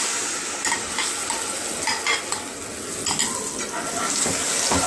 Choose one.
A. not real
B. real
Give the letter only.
B